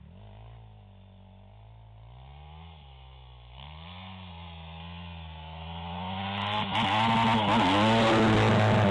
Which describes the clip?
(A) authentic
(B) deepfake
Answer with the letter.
A